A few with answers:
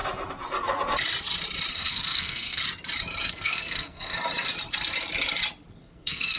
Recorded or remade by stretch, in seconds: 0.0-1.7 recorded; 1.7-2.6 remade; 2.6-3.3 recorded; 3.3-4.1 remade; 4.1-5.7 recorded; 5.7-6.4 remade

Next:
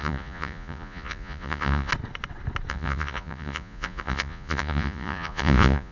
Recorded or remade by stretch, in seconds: 0.0-1.9 remade; 1.9-2.7 recorded; 2.7-5.9 remade

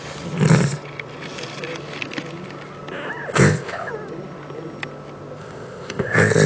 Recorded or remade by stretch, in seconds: 0.0-3.3 recorded; 3.3-3.9 remade; 3.9-5.4 recorded; 5.4-6.5 remade

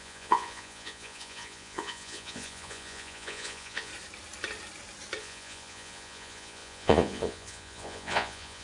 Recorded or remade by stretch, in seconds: 0.0-3.9 remade; 3.9-5.2 recorded; 5.2-8.6 remade

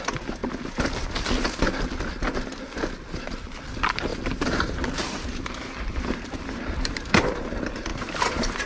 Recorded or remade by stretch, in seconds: 0.0-4.1 recorded; 4.1-7.3 remade; 7.3-7.9 recorded; 7.9-8.7 remade

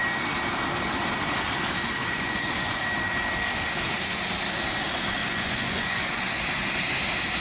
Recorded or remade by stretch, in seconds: 0.0-2.0 recorded; 2.0-2.8 remade; 2.8-5.2 recorded; 5.2-6.4 remade; 6.4-7.4 recorded

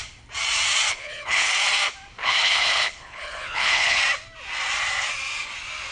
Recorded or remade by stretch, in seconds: 0.0-0.9 recorded; 0.9-1.5 remade; 1.5-2.2 recorded; 2.2-4.0 remade; 4.0-5.9 recorded